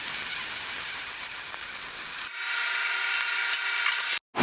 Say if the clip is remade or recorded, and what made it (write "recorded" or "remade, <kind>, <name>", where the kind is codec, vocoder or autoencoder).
recorded